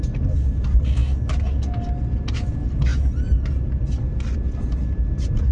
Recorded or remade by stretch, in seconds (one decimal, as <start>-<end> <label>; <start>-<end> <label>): 0.0-5.5 recorded